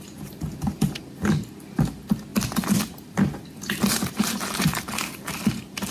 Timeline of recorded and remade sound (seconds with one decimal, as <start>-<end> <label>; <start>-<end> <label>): 0.0-5.9 recorded